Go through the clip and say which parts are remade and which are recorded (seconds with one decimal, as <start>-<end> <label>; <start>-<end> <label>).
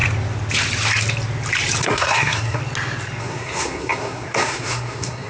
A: 0.0-1.8 recorded; 1.8-2.6 remade; 2.6-3.2 recorded; 3.2-5.3 remade